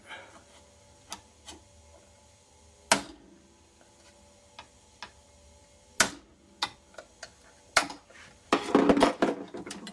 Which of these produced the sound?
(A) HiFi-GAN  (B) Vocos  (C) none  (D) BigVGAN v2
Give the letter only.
C